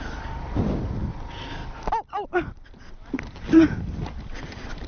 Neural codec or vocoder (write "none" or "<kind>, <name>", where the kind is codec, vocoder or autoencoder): none